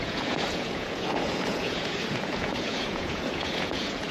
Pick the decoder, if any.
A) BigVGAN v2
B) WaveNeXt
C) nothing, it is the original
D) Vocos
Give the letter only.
D